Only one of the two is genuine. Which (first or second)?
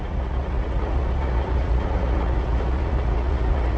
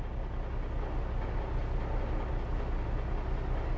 second